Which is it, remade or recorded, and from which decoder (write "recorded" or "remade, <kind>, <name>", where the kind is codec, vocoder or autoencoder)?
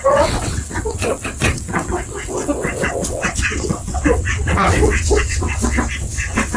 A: remade, vocoder, WaveNeXt